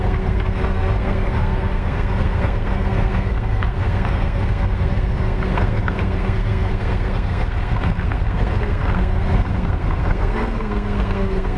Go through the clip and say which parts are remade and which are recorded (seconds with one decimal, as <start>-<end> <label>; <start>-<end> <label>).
0.0-11.6 remade